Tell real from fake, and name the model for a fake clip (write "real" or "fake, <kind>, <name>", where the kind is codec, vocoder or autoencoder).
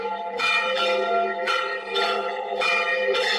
fake, vocoder, BigVGAN v2